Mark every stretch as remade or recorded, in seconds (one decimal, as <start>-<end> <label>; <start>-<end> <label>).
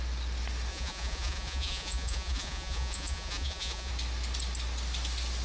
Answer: 0.0-0.7 recorded; 0.7-3.9 remade; 3.9-5.4 recorded